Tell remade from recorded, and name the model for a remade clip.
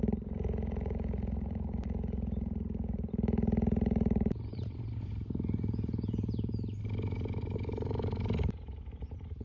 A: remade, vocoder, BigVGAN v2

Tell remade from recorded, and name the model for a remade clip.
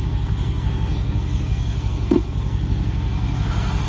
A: remade, codec, SNAC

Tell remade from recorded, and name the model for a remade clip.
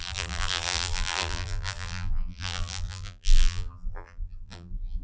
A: remade, vocoder, BigVGAN v2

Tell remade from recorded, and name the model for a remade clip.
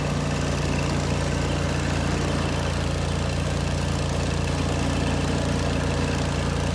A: recorded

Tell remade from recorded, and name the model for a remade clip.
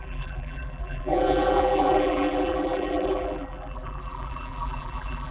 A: remade, vocoder, BigVGAN v2